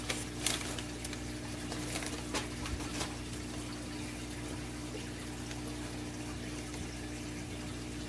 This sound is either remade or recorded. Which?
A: recorded